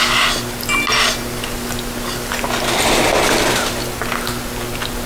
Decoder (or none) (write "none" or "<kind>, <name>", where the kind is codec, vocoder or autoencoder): none